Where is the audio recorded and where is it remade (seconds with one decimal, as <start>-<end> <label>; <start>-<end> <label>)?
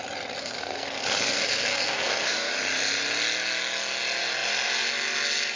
0.0-0.4 recorded; 0.4-2.5 remade; 2.5-5.6 recorded